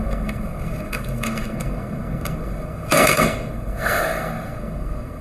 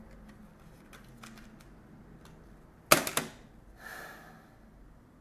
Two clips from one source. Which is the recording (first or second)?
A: second